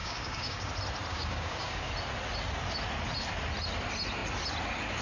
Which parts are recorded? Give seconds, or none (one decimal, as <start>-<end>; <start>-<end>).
0.7-1.1; 1.9-5.0